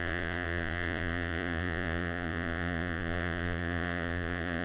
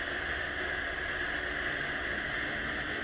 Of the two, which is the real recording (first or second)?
second